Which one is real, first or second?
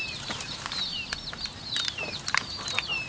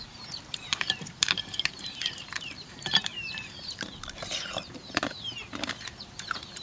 first